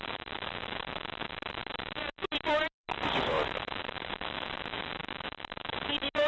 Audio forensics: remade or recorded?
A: recorded